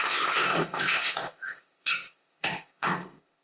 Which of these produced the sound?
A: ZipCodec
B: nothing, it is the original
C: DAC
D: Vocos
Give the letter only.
A